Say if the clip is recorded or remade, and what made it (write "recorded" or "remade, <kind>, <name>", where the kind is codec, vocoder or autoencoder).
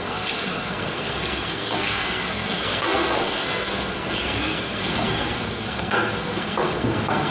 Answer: remade, codec, SNAC